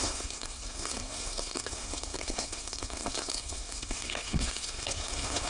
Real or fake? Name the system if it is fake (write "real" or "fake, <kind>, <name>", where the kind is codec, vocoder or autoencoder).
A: fake, codec, SNAC